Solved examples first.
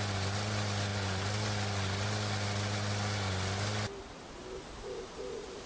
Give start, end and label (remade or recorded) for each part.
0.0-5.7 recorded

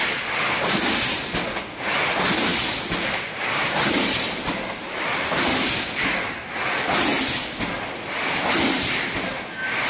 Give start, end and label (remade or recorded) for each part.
0.0-9.9 recorded

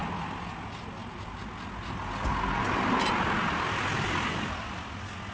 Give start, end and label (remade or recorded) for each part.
0.0-5.3 recorded

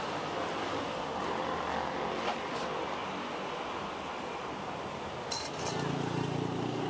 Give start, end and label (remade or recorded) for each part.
0.0-6.9 recorded

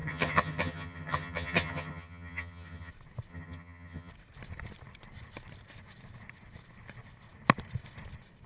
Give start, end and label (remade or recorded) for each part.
0.0-2.9 remade; 2.9-3.3 recorded; 3.3-4.1 remade; 4.1-8.5 recorded